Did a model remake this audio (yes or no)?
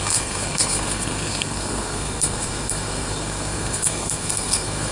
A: yes